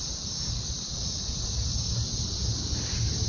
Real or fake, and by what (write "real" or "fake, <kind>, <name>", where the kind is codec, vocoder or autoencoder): fake, vocoder, BigVGAN v2